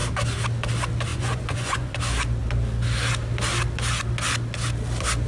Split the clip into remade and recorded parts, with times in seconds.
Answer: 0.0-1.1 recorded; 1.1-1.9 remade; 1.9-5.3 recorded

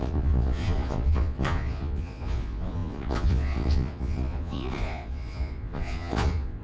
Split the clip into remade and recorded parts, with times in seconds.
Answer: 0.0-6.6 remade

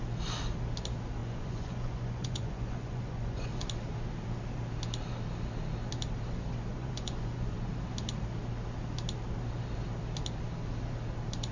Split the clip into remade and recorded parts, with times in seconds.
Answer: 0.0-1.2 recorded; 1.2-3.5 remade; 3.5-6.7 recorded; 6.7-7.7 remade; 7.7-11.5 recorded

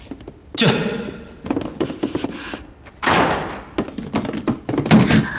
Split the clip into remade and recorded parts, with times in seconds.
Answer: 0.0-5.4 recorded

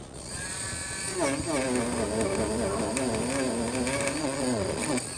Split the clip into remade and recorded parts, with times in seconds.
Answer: 0.0-1.1 remade; 1.1-4.2 recorded; 4.2-5.2 remade

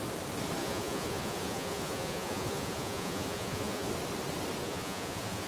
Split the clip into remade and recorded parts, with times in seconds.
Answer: 0.0-0.6 recorded; 0.6-3.9 remade; 3.9-4.6 recorded; 4.6-5.5 remade